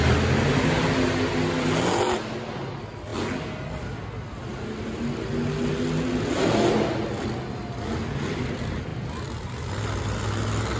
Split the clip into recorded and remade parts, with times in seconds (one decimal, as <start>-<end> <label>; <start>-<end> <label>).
0.0-10.8 recorded